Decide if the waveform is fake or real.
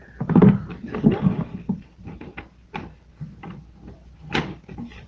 real